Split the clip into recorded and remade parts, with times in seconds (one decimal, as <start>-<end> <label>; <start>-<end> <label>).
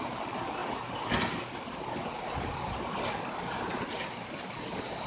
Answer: 0.0-0.6 remade; 0.6-1.9 recorded; 1.9-5.1 remade